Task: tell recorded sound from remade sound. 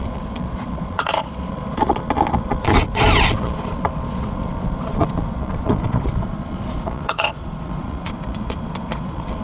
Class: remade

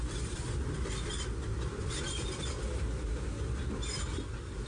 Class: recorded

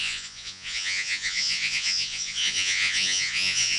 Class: remade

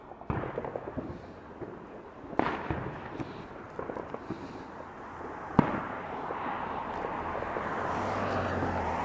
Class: recorded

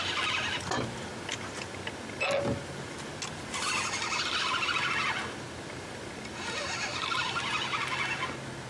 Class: recorded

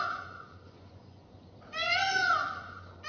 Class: remade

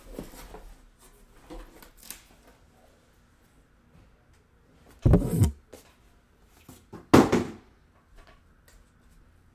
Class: recorded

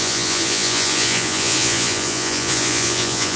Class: remade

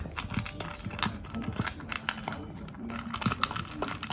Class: recorded